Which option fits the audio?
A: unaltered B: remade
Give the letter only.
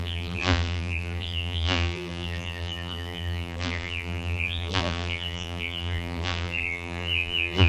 B